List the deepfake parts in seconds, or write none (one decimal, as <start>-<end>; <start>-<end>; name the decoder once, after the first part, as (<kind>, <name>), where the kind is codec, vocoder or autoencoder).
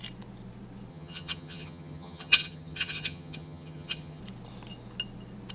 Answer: 0.9-4.2 (vocoder, HiFi-GAN)